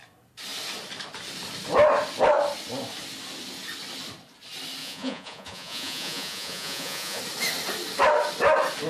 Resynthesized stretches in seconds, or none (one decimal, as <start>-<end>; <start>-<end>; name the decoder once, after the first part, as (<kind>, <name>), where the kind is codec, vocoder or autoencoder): 4.8-7.2 (vocoder, Vocos)